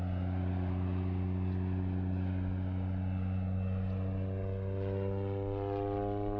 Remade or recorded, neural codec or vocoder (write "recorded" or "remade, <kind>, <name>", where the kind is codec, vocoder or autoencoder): recorded